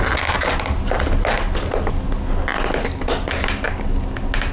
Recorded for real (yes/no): yes